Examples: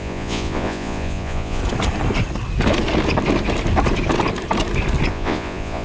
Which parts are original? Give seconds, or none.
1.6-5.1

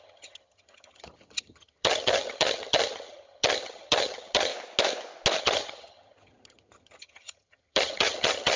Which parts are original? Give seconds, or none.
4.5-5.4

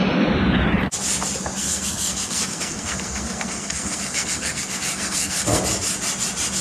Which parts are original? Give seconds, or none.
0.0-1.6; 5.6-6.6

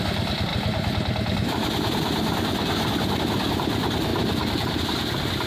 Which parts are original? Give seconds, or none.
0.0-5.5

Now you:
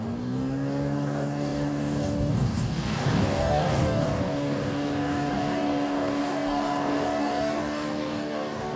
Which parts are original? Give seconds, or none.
none